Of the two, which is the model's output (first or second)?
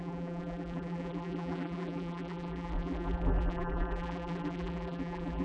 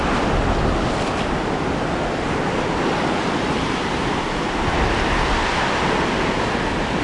first